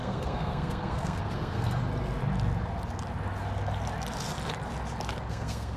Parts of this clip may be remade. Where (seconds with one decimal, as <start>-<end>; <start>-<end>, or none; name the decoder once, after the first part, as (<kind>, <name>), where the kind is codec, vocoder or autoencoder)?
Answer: 0.0-1.8 (codec, SNAC); 5.3-5.8